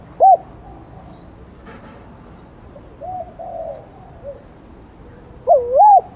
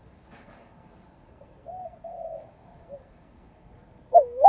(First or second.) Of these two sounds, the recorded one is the first